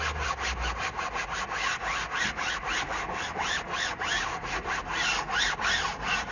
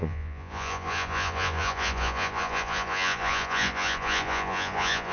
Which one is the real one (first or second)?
first